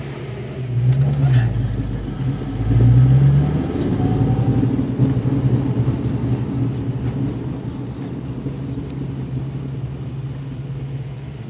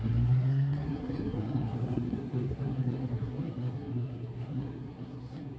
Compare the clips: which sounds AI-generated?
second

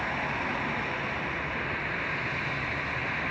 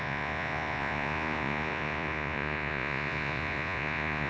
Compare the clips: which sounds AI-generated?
second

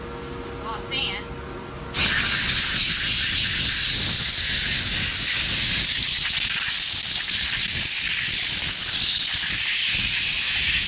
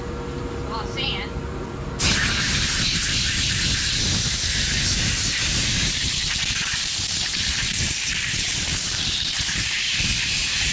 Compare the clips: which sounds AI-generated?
second